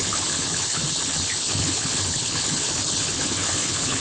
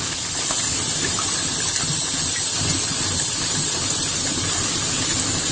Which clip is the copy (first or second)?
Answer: first